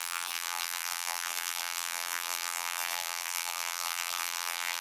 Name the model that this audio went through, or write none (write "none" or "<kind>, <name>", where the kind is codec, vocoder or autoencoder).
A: vocoder, BigVGAN v2